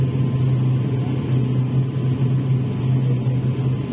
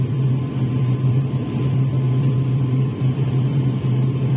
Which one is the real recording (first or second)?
first